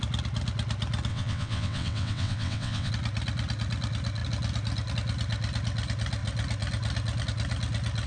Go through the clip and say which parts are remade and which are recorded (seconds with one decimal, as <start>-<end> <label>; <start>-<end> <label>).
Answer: 0.0-1.1 recorded; 1.1-2.9 remade; 2.9-8.1 recorded